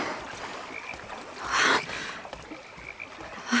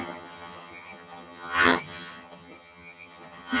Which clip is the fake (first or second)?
second